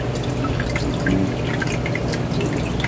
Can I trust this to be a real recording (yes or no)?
yes